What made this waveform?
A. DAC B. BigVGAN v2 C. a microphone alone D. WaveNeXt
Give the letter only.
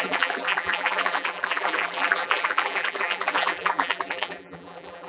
B